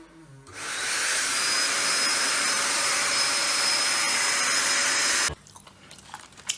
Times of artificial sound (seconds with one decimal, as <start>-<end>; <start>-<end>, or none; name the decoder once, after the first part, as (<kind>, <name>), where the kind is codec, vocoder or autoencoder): 2.1-3.8 (vocoder, BigVGAN v2)